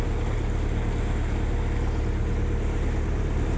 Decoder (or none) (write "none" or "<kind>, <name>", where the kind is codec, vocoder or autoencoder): none